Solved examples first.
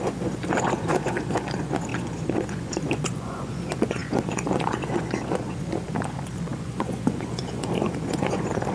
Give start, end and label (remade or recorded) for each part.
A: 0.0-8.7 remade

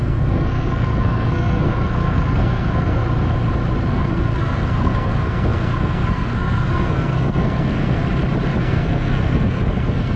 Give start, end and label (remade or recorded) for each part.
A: 0.0-3.0 remade; 3.0-3.9 recorded; 3.9-8.0 remade; 8.0-8.6 recorded; 8.6-10.2 remade